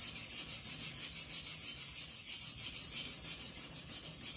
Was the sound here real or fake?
real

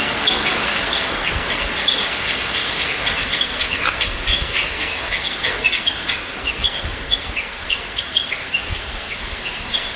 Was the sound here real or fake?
fake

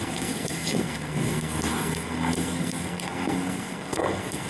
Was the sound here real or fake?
fake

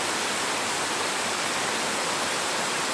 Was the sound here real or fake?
real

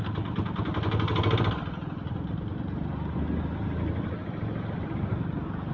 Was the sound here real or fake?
real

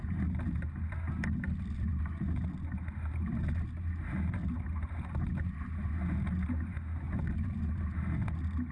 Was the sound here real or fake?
real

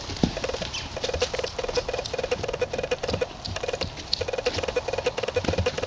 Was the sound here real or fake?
real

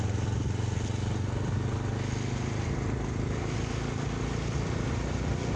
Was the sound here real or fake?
real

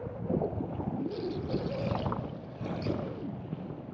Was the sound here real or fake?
real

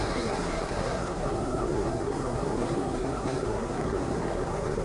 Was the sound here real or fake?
fake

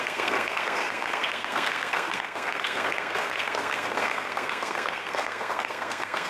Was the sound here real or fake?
fake